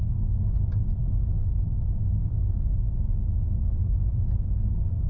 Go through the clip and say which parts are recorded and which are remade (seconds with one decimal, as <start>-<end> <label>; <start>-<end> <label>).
0.0-1.0 recorded; 1.0-4.1 remade; 4.1-5.1 recorded